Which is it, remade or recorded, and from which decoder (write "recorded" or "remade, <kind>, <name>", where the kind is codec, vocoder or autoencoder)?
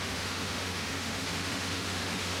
remade, autoencoder, DAC-VAE